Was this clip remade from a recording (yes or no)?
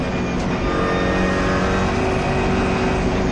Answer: no